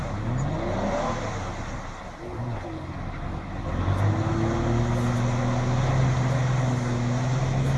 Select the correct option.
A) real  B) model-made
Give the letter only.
A